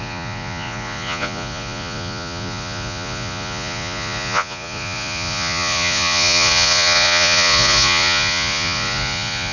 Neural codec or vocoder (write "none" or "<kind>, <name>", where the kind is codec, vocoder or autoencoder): vocoder, Vocos